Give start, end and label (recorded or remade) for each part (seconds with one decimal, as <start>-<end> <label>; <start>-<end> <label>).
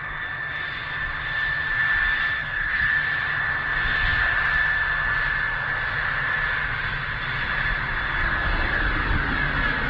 0.0-2.4 recorded; 2.4-2.9 remade; 2.9-9.9 recorded